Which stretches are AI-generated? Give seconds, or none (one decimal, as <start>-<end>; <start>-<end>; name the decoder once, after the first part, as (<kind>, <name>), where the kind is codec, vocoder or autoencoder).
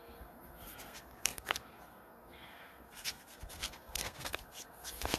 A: 0.0-5.2 (codec, SNAC)